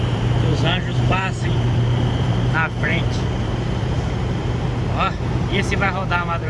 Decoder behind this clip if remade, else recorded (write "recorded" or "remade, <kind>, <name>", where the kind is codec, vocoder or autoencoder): remade, vocoder, BigVGAN v2